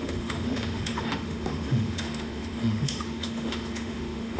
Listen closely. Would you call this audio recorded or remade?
remade